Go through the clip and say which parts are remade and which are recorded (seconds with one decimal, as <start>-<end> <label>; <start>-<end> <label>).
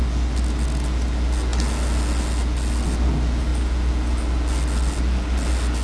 0.0-5.8 recorded